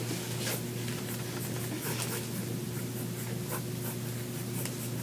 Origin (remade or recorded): recorded